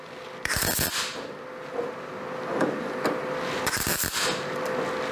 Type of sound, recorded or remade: remade